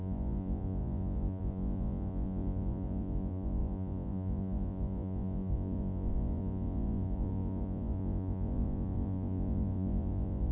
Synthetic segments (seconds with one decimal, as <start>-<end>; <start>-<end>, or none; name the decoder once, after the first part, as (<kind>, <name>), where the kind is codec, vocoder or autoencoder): 0.0-10.5 (vocoder, Vocos)